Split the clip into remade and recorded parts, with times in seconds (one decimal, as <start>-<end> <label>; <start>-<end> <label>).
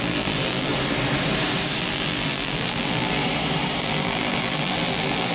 0.0-0.7 remade; 0.7-1.8 recorded; 1.8-3.2 remade; 3.2-3.8 recorded; 3.8-5.3 remade